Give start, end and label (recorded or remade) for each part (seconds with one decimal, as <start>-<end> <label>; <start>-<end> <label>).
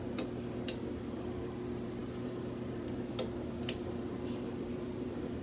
0.0-2.0 recorded; 2.0-5.4 remade